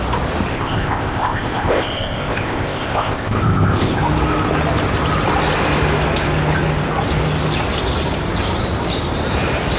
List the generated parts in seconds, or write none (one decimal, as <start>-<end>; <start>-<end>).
0.5-4.0